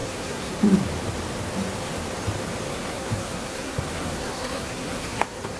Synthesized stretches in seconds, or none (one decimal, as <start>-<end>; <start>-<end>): 0.0-0.5; 2.7-5.6